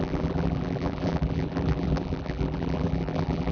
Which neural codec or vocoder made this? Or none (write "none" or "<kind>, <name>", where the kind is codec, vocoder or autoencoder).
vocoder, BigVGAN v2